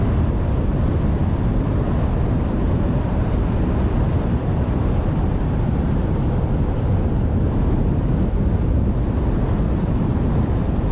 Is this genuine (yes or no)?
yes